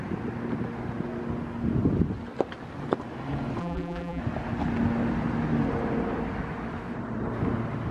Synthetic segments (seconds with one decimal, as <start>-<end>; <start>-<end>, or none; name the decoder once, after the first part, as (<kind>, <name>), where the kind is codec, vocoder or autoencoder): 3.6-4.2 (vocoder, BigVGAN v2)